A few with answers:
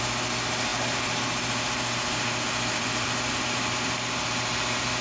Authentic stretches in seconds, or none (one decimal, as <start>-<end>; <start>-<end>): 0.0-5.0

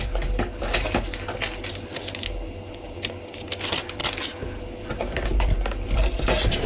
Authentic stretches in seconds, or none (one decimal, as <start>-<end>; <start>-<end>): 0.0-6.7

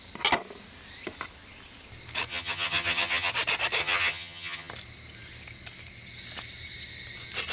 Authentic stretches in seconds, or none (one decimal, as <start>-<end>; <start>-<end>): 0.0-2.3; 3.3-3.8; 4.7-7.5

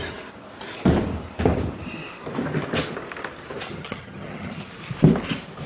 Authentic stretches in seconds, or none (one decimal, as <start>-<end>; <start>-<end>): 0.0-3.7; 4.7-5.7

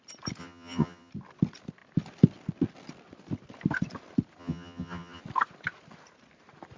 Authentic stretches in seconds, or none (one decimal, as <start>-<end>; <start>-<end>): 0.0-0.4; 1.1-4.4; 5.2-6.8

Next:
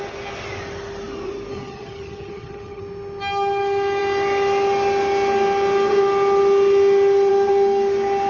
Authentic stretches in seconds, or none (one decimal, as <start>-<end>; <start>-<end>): 0.0-1.5; 2.8-8.3